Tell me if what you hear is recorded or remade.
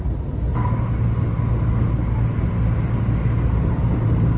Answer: recorded